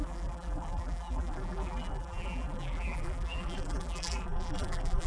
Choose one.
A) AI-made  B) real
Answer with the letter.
A